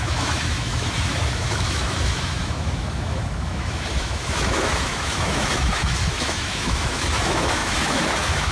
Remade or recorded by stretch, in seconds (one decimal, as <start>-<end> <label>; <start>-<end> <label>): 0.0-8.5 remade